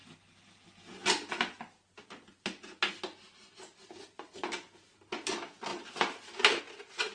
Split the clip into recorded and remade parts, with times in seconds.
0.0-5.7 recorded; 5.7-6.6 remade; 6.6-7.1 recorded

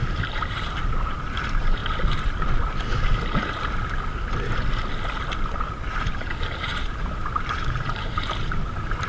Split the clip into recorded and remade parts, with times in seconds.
0.0-1.8 remade; 1.8-5.5 recorded; 5.5-9.1 remade

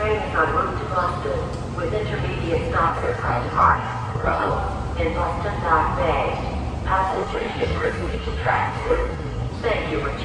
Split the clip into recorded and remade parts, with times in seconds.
0.0-2.9 recorded; 2.9-4.5 remade; 4.5-7.1 recorded; 7.1-9.5 remade; 9.5-10.2 recorded

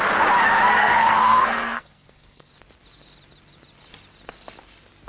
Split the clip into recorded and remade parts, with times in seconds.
0.0-0.7 recorded; 0.7-2.5 remade; 2.5-5.1 recorded

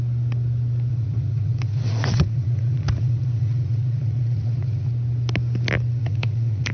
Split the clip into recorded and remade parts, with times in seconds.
0.0-0.9 recorded; 0.9-4.9 remade; 4.9-6.0 recorded; 6.0-6.7 remade